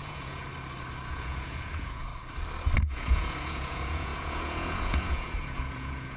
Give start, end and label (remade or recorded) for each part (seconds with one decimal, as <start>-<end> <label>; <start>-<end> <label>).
0.0-0.5 remade; 0.5-1.1 recorded; 1.1-2.1 remade; 2.1-2.9 recorded; 2.9-6.2 remade